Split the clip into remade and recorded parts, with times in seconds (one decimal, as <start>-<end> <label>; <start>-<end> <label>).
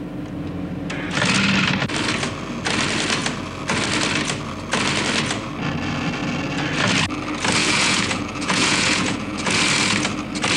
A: 0.0-7.6 recorded; 7.6-9.6 remade; 9.6-10.6 recorded